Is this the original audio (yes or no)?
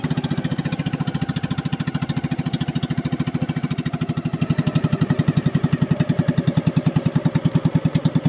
yes